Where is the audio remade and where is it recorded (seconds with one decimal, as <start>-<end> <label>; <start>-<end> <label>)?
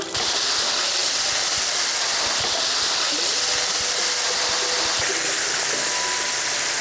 0.0-6.8 recorded